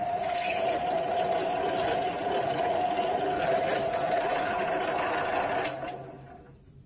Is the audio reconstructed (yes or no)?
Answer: no